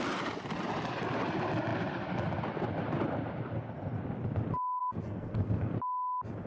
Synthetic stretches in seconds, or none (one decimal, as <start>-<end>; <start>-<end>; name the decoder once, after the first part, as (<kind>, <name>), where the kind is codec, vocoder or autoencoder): 4.8-5.7 (codec, SNAC)